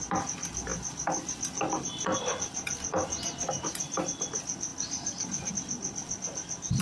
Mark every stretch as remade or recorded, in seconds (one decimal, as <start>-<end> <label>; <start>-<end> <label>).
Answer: 0.0-6.8 recorded